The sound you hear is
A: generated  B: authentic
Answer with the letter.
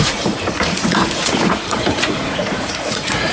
A